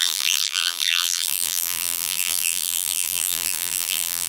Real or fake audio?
fake